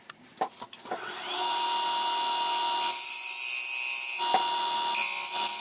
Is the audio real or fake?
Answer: real